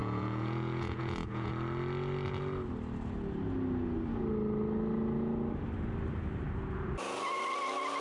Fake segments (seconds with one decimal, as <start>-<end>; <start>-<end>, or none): 0.0-1.5